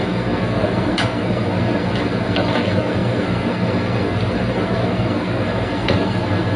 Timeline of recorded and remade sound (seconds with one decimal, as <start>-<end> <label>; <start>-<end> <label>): 0.0-6.6 remade